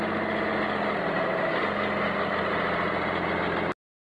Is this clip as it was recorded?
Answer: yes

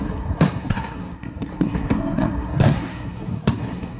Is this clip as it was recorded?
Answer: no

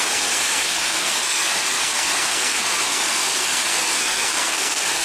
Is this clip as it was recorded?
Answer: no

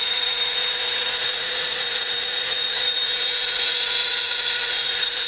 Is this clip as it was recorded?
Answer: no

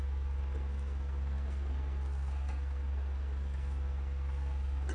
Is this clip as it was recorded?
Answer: no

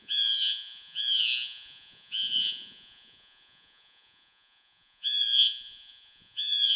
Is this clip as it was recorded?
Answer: no